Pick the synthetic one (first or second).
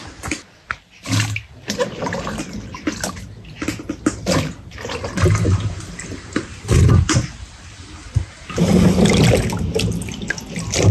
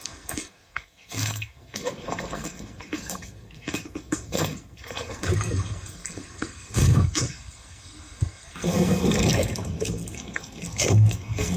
second